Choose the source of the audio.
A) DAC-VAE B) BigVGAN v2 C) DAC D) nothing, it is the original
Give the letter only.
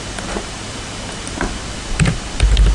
D